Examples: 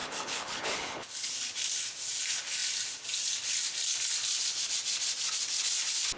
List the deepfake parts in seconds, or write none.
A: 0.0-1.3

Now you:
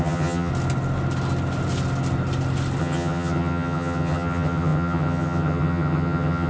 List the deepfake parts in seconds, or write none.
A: 0.0-0.5; 2.8-6.5

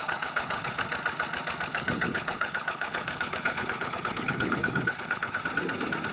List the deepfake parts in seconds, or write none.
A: 0.0-0.8; 1.7-5.4

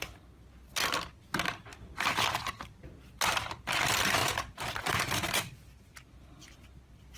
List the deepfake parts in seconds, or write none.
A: none